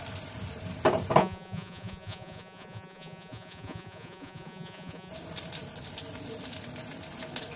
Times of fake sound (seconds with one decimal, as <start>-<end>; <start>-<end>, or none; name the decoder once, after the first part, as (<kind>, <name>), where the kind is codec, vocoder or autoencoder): 1.2-5.1 (vocoder, Vocos)